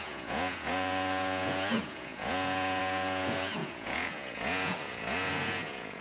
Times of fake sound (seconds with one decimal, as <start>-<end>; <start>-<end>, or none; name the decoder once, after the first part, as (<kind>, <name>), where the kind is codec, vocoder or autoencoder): 0.0-6.0 (vocoder, Vocos)